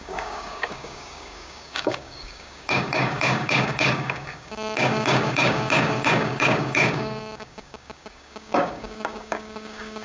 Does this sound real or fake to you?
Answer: fake